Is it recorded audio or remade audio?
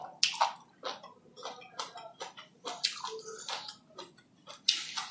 recorded